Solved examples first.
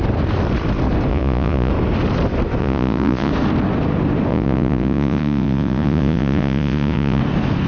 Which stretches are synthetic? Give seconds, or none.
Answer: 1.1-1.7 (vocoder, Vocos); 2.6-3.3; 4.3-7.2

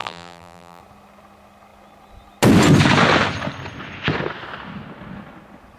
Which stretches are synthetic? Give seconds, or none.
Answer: 0.0-0.8 (vocoder, BigVGAN v2)

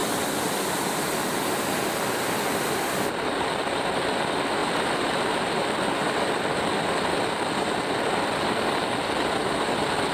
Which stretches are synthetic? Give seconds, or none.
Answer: 4.6-5.3 (vocoder, BigVGAN v2)

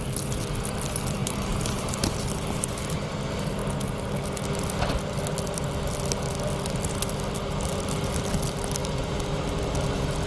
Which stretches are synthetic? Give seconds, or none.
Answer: 1.2-2.7 (vocoder, BigVGAN v2)

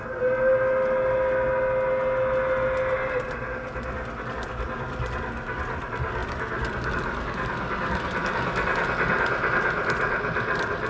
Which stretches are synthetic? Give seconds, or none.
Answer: none

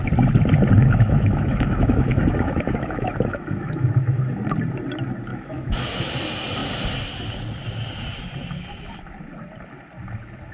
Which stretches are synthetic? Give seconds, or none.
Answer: 0.8-4.4 (autoencoder, DAC-VAE); 5.3-6.1

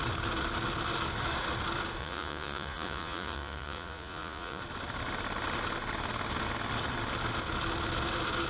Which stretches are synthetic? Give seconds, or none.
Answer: 2.0-4.6 (vocoder, Vocos)